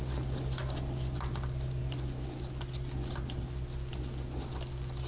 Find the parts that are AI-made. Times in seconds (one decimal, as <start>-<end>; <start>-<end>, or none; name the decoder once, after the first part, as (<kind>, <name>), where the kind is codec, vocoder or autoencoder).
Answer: none